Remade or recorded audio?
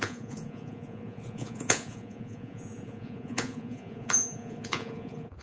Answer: remade